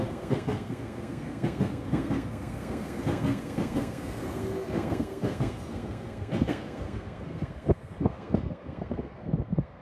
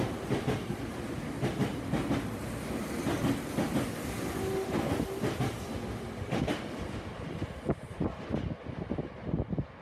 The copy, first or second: first